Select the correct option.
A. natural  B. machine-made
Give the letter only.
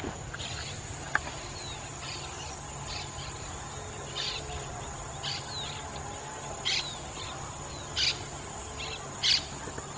A